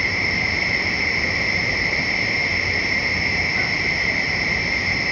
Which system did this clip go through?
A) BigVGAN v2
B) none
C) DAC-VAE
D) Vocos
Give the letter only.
A